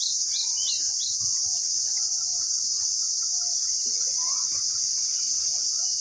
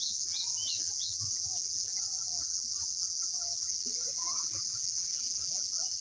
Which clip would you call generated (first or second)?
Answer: second